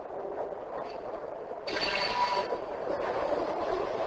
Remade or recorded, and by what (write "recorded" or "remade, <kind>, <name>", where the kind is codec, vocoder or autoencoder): recorded